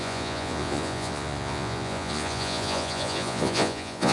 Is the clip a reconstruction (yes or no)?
yes